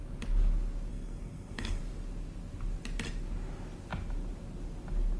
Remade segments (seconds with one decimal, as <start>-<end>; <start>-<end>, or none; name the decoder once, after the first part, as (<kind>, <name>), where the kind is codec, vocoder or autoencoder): 0.9-1.8 (codec, SNAC)